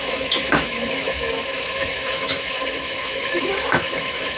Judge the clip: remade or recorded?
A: remade